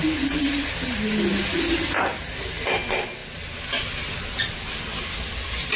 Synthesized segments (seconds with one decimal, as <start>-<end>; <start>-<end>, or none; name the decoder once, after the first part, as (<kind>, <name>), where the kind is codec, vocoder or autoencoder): none